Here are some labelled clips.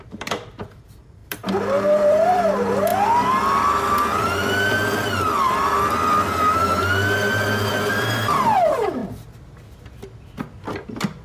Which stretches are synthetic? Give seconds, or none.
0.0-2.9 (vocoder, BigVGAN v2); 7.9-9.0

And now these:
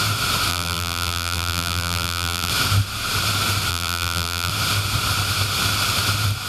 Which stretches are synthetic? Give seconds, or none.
0.5-2.5 (vocoder, BigVGAN v2); 3.7-4.5

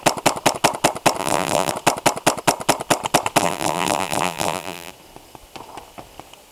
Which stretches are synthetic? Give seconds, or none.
1.2-1.7 (vocoder, BigVGAN v2); 3.4-4.9

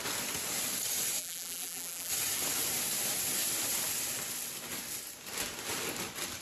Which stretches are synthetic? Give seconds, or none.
1.2-2.1 (vocoder, BigVGAN v2)